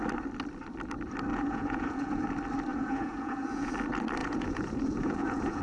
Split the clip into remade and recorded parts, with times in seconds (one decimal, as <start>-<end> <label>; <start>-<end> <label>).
0.0-1.3 recorded; 1.3-2.3 remade; 2.3-2.7 recorded; 2.7-3.7 remade; 3.7-4.2 recorded; 4.2-5.6 remade

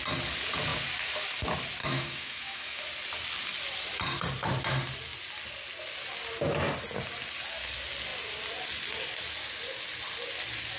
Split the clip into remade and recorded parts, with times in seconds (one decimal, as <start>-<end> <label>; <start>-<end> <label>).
0.0-1.8 recorded; 1.8-2.8 remade; 2.8-10.8 recorded

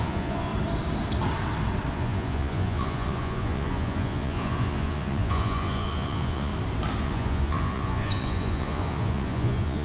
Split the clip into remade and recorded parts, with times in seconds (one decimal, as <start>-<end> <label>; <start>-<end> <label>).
0.0-0.5 remade; 0.5-1.9 recorded; 1.9-6.5 remade; 6.5-7.0 recorded; 7.0-9.8 remade